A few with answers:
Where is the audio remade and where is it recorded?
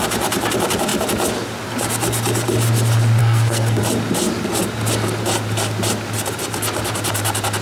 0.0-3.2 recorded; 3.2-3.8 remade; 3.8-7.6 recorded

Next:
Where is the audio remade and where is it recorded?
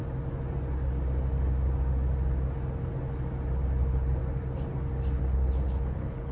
0.0-3.8 recorded; 3.8-4.2 remade; 4.2-5.2 recorded; 5.2-6.3 remade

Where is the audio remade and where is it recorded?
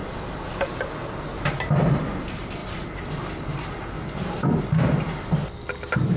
0.0-6.2 recorded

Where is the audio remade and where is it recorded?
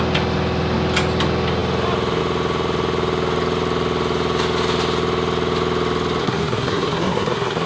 0.0-6.2 recorded; 6.2-7.7 remade